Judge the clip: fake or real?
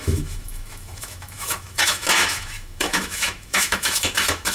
fake